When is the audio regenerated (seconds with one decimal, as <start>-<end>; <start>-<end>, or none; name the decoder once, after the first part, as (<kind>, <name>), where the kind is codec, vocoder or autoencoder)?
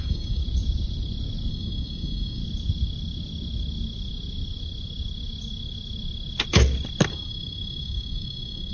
0.0-0.4 (codec, DAC); 1.5-2.4; 7.1-8.7